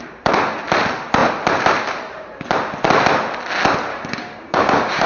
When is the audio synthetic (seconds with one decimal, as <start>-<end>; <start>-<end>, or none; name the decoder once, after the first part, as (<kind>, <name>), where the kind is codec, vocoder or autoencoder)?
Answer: 3.9-5.1 (codec, DAC)